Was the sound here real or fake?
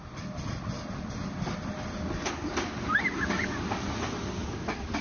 real